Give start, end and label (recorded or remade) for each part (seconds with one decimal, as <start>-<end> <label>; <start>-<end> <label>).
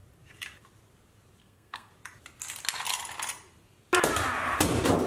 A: 0.0-1.4 recorded; 1.4-1.9 remade; 1.9-5.1 recorded